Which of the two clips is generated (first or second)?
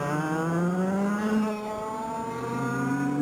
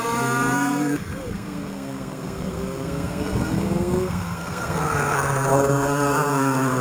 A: second